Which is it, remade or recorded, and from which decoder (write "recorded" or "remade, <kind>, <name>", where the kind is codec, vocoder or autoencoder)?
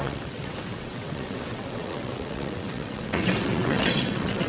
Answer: remade, vocoder, WaveNeXt